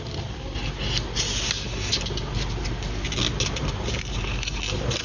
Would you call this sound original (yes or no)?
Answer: yes